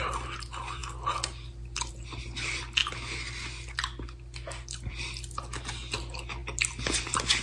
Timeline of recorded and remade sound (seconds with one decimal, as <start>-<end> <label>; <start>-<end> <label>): 0.0-7.4 recorded